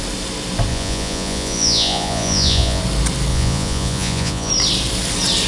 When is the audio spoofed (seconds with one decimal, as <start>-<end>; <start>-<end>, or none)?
0.7-2.8; 3.3-4.5